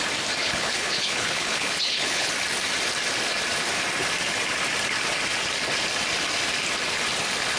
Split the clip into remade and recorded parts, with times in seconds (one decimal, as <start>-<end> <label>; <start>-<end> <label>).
0.0-0.4 recorded; 0.4-2.3 remade; 2.3-7.6 recorded